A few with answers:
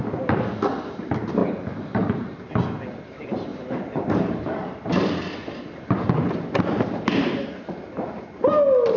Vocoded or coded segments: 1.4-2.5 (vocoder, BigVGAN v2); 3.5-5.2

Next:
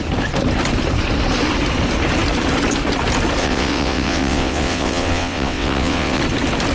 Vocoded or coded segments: 3.4-6.2 (vocoder, WaveNeXt)

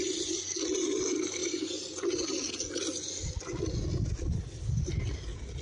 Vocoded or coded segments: none

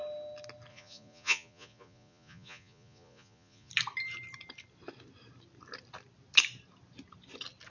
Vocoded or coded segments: 0.7-3.7 (vocoder, Vocos)